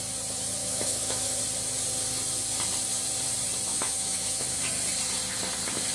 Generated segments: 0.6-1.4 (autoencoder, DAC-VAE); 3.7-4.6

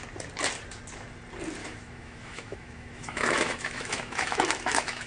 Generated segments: 1.6-5.1 (autoencoder, DAC-VAE)

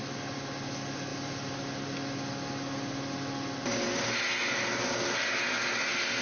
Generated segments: none

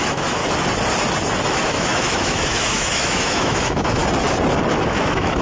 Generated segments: 0.0-0.4 (autoencoder, DAC-VAE); 1.5-4.0; 4.7-5.4

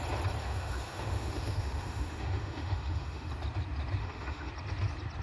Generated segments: 0.4-3.3 (autoencoder, DAC-VAE); 4.0-4.5

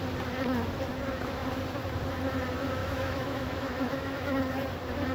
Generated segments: 2.8-4.4 (autoencoder, DAC-VAE)

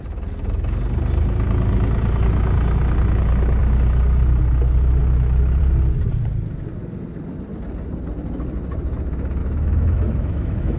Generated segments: 9.4-10.8 (autoencoder, DAC-VAE)

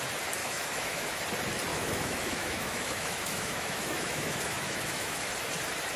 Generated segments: 0.4-1.2 (autoencoder, DAC-VAE); 1.7-5.3